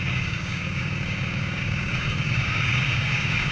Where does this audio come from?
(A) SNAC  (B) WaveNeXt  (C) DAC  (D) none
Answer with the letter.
C